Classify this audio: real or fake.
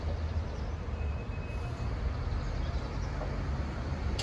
real